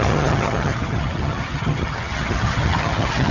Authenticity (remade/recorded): remade